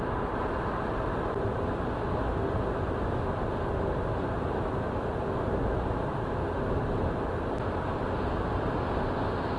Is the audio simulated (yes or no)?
no